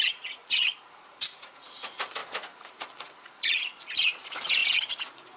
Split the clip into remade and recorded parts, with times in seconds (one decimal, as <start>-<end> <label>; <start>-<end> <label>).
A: 0.0-5.4 remade